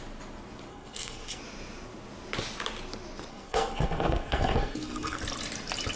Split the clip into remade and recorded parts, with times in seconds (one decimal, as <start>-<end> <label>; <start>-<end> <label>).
0.0-0.7 recorded; 0.7-1.4 remade; 1.4-3.3 recorded; 3.3-5.2 remade; 5.2-6.0 recorded